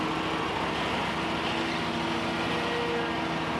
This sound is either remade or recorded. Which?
recorded